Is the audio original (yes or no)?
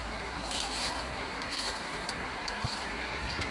no